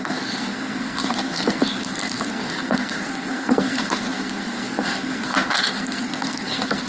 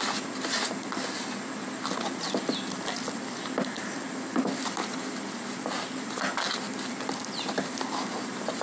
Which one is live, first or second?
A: second